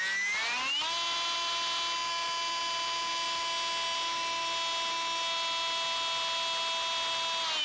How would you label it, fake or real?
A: real